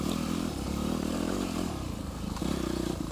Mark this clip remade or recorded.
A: remade